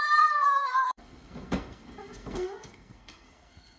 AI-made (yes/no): yes